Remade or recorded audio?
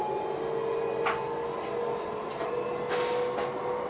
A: recorded